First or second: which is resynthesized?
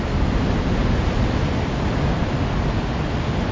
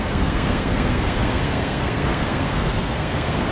second